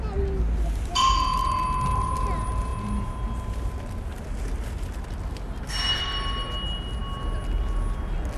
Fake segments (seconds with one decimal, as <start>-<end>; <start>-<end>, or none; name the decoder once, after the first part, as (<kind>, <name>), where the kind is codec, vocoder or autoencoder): none